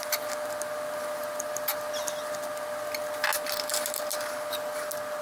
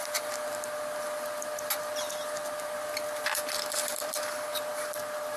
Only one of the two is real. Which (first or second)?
first